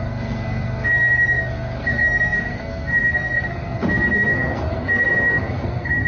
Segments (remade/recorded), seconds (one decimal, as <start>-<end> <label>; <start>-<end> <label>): 0.0-6.1 remade